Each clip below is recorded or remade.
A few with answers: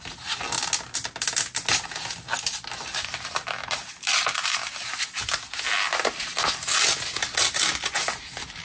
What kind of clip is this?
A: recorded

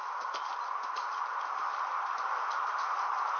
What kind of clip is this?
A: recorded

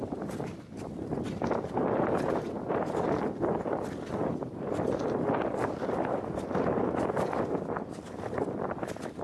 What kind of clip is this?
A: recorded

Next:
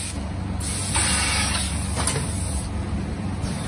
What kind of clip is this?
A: recorded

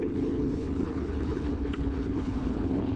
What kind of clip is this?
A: remade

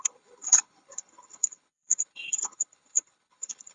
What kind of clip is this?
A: remade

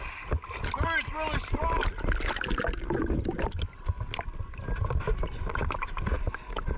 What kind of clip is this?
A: recorded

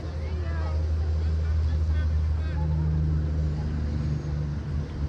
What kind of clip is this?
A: recorded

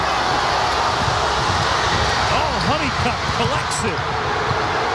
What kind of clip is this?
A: recorded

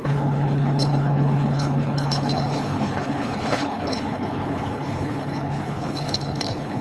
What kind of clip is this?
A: remade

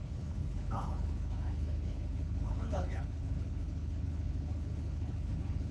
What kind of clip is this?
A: remade